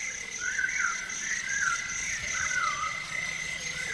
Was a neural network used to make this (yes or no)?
yes